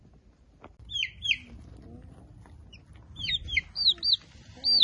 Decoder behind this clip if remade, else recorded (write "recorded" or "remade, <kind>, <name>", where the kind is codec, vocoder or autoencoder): recorded